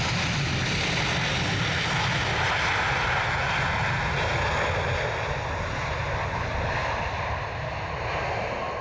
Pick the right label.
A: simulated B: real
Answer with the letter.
B